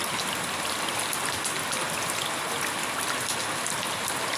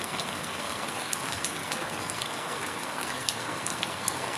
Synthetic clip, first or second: second